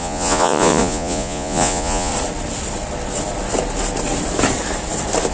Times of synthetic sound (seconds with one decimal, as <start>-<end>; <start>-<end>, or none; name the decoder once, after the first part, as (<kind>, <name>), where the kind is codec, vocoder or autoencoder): 0.0-2.1 (vocoder, Vocos)